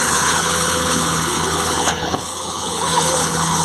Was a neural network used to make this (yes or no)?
yes